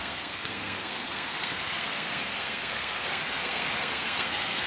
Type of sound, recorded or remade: remade